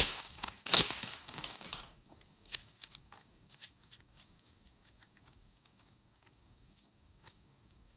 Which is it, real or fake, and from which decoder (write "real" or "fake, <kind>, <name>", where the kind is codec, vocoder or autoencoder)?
fake, codec, DAC